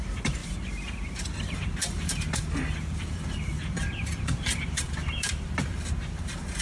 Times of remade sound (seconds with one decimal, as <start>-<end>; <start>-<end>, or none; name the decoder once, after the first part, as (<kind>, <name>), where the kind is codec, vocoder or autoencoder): 0.0-6.6 (vocoder, BigVGAN v2)